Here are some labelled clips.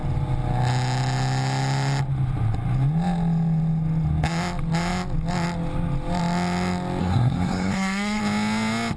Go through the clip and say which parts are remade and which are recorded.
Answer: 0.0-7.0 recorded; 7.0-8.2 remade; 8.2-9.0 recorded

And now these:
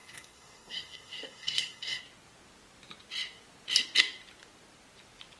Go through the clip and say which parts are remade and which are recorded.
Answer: 0.0-2.0 remade; 2.0-5.4 recorded